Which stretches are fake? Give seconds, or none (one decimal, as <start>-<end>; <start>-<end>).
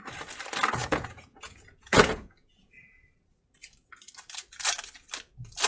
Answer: 0.8-3.1